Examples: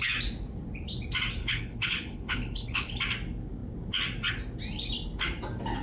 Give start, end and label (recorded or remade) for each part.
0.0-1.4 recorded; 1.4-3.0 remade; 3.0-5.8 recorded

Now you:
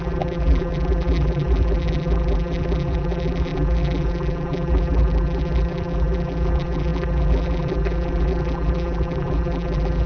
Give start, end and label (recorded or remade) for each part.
0.0-10.1 remade

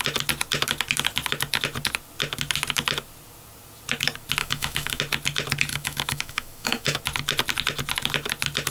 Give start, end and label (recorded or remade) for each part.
0.0-4.4 recorded; 4.4-5.0 remade; 5.0-5.7 recorded; 5.7-7.0 remade; 7.0-8.7 recorded

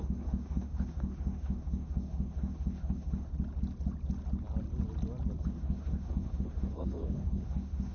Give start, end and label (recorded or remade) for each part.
0.0-3.3 remade; 3.3-5.4 recorded; 5.4-7.9 remade